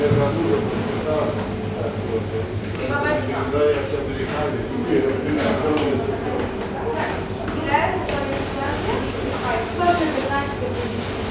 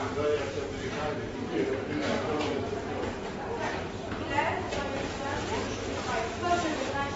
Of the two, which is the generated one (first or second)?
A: second